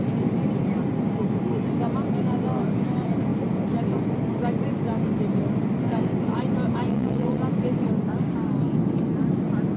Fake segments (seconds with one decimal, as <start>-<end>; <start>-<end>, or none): 6.9-7.4